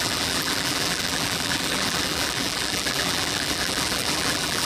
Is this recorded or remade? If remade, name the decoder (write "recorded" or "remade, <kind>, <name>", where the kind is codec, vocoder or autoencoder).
remade, vocoder, BigVGAN v2